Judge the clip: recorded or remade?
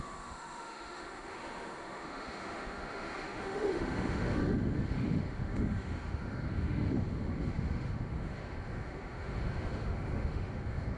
remade